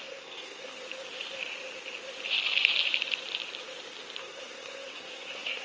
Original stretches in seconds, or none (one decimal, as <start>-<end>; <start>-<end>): 0.8-4.2